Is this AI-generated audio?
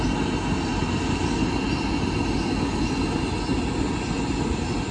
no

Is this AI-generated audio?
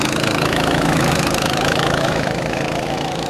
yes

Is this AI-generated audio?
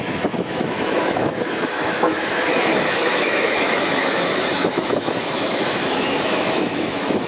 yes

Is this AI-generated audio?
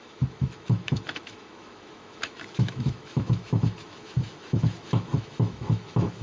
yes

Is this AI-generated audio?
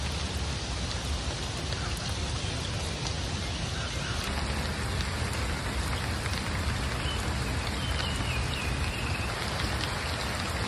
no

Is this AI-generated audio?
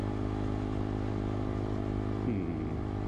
no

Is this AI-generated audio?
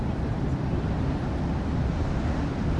no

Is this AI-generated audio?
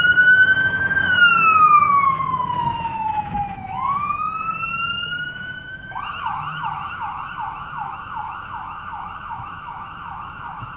yes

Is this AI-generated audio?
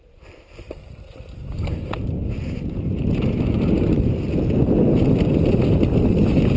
no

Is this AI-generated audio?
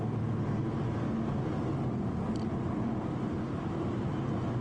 no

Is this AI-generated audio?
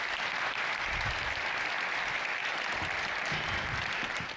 no